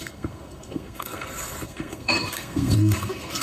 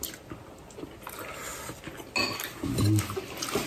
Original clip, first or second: second